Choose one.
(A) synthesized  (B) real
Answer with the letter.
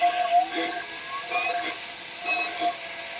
B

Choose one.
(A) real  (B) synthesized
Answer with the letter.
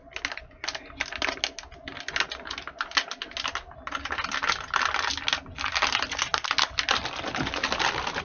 A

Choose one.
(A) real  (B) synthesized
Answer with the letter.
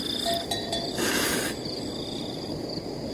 A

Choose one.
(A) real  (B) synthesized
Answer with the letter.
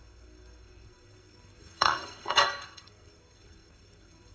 B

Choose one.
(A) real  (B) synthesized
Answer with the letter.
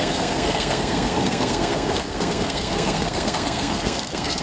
B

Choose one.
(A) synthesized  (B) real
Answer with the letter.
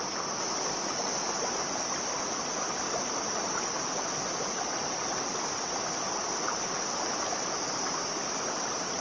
B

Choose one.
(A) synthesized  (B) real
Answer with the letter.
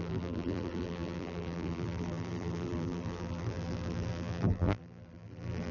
A